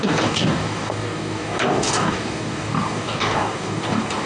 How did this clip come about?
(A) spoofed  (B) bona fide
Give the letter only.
A